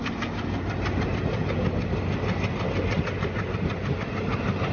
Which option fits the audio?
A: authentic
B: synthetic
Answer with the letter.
A